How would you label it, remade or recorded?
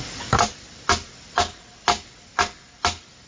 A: recorded